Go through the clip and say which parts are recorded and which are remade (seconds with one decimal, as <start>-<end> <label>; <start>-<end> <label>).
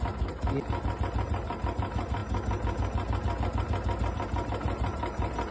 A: 0.0-5.5 recorded